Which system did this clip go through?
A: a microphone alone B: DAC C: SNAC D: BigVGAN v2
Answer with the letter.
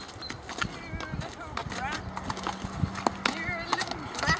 A